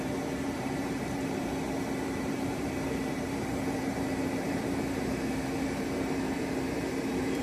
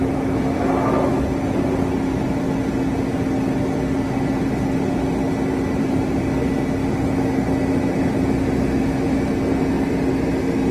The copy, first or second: first